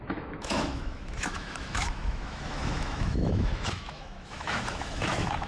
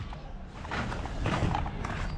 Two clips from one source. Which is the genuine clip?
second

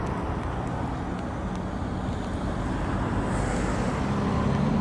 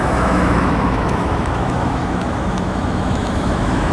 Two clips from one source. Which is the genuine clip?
first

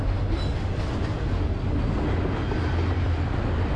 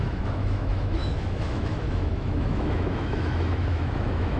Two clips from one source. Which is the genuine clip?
first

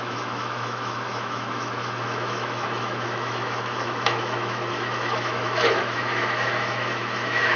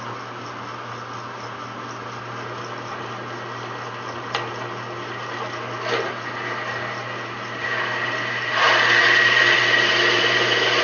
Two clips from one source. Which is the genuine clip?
second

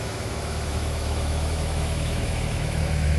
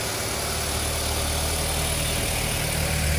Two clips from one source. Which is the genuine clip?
second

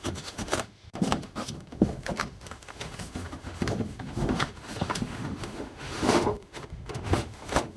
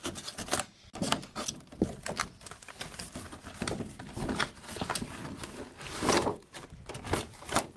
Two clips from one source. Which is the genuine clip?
second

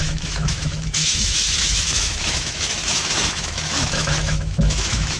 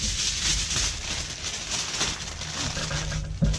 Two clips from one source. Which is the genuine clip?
second